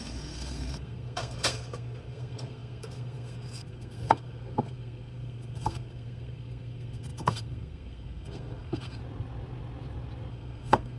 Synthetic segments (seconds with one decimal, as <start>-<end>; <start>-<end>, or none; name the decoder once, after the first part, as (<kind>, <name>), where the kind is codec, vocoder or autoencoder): 0.0-9.0 (codec, SNAC); 10.3-11.0